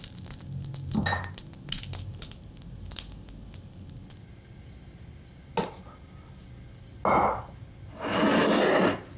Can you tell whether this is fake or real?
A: real